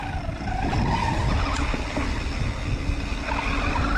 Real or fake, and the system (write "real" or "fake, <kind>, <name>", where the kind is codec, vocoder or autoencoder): real